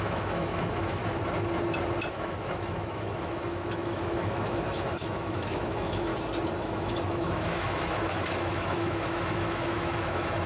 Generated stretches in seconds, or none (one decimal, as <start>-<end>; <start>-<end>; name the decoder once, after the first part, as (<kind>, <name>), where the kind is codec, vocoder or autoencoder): 0.0-1.0 (autoencoder, DAC-VAE); 2.1-6.1; 6.6-10.5